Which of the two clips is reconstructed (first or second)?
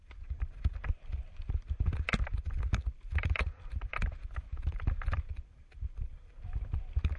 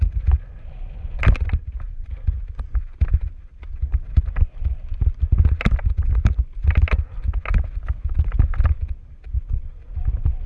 first